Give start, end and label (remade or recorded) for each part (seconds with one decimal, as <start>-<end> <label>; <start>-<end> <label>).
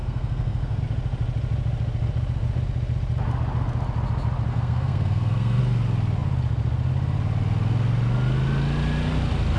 0.0-0.8 remade; 0.8-4.5 recorded; 4.5-5.6 remade; 5.6-9.6 recorded